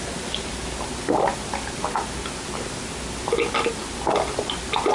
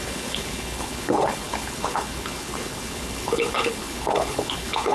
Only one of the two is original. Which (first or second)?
first